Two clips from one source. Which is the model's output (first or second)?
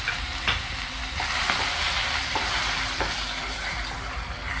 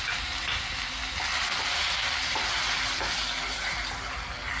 first